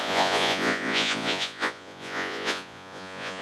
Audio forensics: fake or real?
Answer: fake